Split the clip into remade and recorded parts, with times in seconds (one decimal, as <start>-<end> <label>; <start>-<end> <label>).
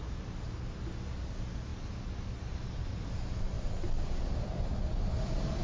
0.0-5.6 recorded